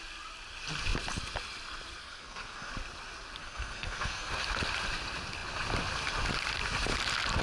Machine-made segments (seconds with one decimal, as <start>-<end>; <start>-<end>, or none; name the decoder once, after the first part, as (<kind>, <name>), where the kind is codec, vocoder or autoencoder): 2.0-2.7 (codec, SNAC); 3.4-4.3